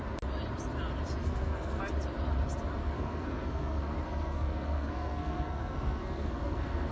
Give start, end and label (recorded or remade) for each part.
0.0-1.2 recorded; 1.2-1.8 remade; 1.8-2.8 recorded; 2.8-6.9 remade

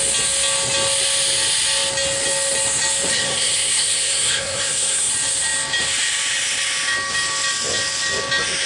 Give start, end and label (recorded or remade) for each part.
0.0-3.1 recorded; 3.1-5.1 remade; 5.1-8.7 recorded

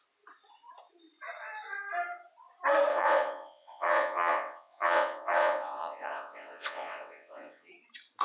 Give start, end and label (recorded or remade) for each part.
0.0-2.9 recorded; 2.9-7.7 remade; 7.7-8.2 recorded

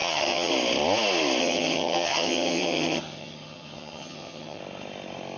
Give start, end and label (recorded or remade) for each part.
0.0-0.5 remade; 0.5-1.4 recorded; 1.4-4.6 remade; 4.6-5.4 recorded

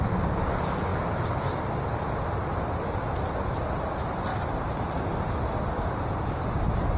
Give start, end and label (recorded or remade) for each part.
0.0-7.0 recorded

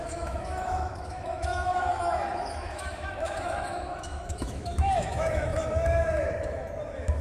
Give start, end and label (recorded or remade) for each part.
0.0-7.2 remade

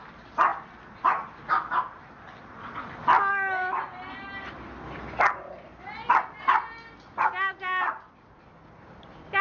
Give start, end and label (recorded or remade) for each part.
0.0-9.4 recorded

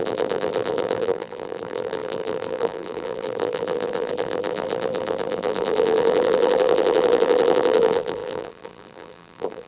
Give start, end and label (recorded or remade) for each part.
0.0-9.7 remade